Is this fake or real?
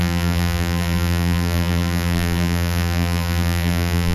fake